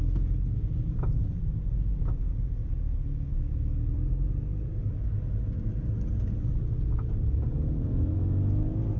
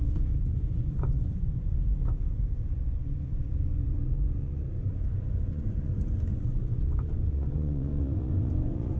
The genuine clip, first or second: first